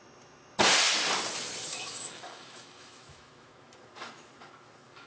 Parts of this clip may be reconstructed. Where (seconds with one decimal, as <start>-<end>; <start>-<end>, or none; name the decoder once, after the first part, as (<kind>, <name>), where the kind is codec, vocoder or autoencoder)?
1.7-5.1 (autoencoder, DAC-VAE)